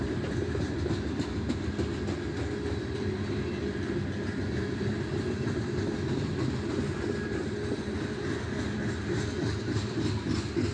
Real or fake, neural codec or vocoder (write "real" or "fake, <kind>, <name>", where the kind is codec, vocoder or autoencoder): real